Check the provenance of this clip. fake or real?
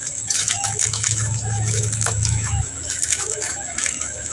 fake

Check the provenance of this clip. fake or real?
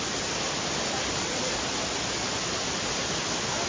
real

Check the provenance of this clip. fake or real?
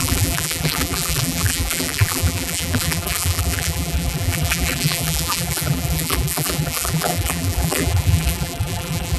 fake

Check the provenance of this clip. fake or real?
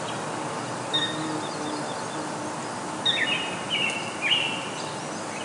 real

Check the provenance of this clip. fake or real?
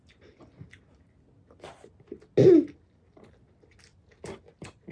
real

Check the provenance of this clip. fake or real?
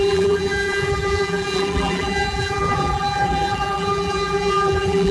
fake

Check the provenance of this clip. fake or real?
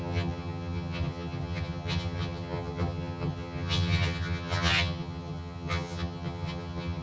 fake